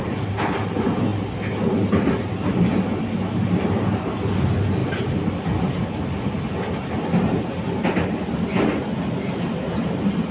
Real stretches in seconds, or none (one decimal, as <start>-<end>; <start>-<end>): 0.0-10.3